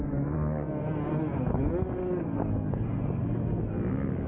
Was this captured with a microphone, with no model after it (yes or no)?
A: yes